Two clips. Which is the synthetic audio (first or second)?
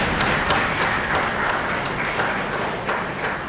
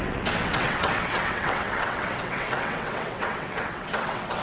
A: second